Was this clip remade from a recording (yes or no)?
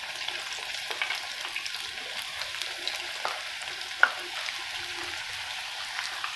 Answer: yes